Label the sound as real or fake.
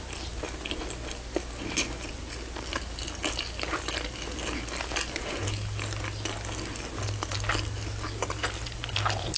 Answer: real